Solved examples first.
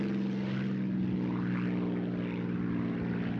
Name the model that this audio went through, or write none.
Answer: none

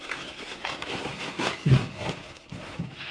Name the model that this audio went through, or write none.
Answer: codec, SNAC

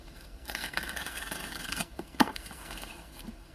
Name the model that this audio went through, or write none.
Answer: codec, SNAC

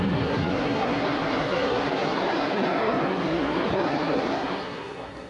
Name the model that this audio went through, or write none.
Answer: codec, SNAC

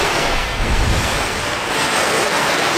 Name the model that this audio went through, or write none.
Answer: codec, SNAC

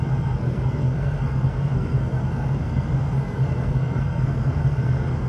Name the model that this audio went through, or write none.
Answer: codec, SNAC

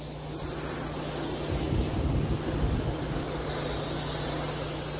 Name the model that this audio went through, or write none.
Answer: none